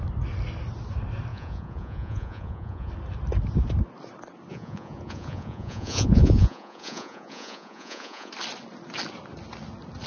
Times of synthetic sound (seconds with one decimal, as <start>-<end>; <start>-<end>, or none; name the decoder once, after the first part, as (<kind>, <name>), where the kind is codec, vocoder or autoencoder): 1.3-2.9 (vocoder, Vocos); 4.5-8.3